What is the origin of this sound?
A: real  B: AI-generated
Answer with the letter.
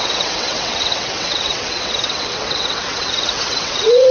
B